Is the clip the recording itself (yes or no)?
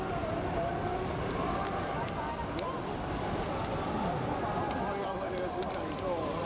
yes